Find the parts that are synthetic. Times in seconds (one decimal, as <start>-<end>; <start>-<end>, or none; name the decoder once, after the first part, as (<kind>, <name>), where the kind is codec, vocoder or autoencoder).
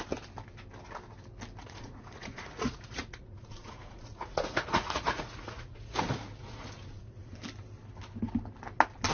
1.6-6.0 (vocoder, Vocos); 6.4-7.3